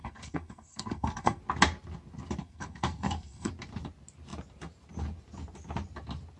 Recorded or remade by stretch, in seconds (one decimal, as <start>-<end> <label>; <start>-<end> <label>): 0.0-1.4 remade; 1.4-2.4 recorded; 2.4-3.5 remade; 3.5-6.4 recorded